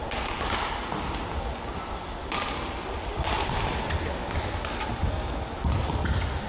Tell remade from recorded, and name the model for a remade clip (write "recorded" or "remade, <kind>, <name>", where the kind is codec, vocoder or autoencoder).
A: recorded